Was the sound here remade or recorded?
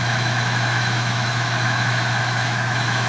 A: remade